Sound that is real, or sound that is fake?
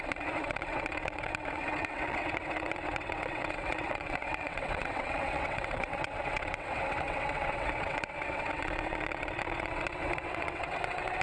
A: fake